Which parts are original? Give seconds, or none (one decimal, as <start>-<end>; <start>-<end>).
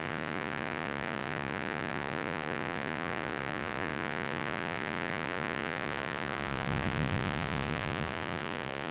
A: none